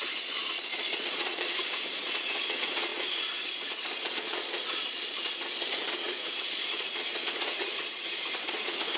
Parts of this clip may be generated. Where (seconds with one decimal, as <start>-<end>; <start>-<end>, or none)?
0.0-9.0